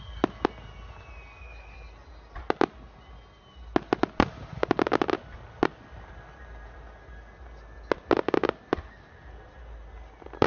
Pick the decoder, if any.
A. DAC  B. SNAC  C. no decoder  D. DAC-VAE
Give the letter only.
C